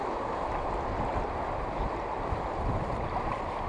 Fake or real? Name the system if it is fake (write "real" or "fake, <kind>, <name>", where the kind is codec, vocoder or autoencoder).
real